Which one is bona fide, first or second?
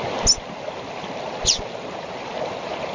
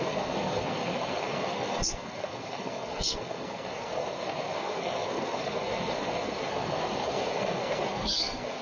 first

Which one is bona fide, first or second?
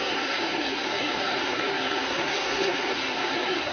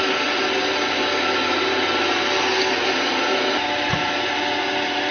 second